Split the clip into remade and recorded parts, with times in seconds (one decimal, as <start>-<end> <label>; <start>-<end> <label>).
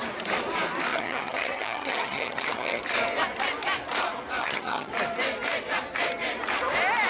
0.0-0.9 recorded; 0.9-2.8 remade; 2.8-4.4 recorded; 4.4-4.9 remade; 4.9-7.1 recorded